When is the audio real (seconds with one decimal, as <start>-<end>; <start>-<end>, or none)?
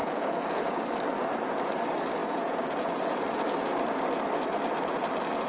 0.8-2.2; 3.2-5.5